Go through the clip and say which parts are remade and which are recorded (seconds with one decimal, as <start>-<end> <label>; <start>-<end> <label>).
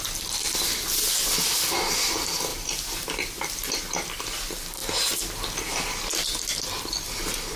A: 0.0-2.5 recorded; 2.5-3.8 remade; 3.8-7.6 recorded